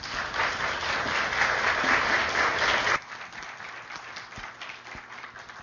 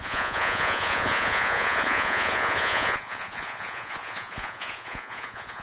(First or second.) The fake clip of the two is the second